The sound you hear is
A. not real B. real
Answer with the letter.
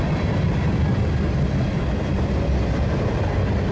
B